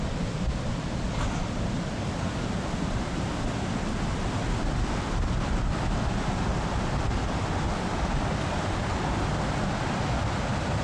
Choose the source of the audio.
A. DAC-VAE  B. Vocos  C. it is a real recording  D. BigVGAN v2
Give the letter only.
C